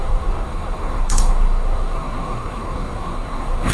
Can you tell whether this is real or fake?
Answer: fake